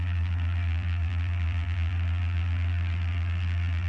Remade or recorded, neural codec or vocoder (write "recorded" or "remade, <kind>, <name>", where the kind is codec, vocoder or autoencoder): remade, vocoder, BigVGAN v2